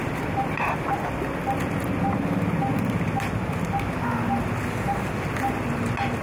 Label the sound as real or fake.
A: real